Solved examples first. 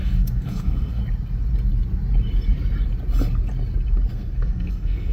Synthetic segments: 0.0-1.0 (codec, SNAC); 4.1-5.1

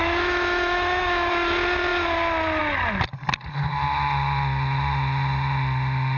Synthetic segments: 0.0-1.3 (autoencoder, DAC-VAE)

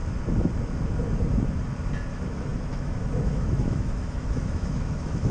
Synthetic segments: 2.1-5.3 (autoencoder, DAC-VAE)

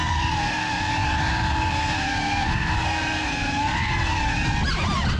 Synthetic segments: 0.0-0.9 (codec, SNAC); 1.3-3.9

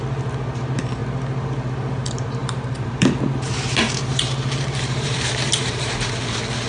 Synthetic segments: 2.4-5.9 (vocoder, BigVGAN v2)

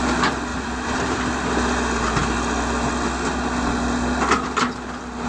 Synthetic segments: 0.5-1.3 (vocoder, BigVGAN v2)

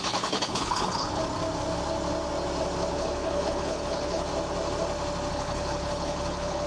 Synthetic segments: 0.0-1.2 (codec, HILCodec); 2.9-4.3; 5.3-6.7